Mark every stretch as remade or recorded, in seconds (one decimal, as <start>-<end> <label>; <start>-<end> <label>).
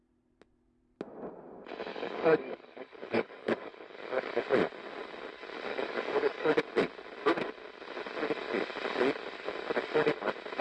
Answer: 0.0-1.9 recorded; 1.9-4.4 remade; 4.4-5.7 recorded; 5.7-6.6 remade; 6.6-10.6 recorded